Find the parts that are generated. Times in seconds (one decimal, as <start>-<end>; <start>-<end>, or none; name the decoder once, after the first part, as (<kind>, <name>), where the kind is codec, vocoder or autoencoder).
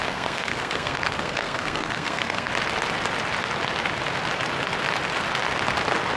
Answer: 0.0-2.5 (codec, SNAC)